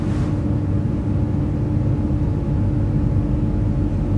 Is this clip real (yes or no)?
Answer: yes